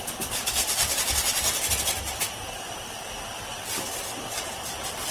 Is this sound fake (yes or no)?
no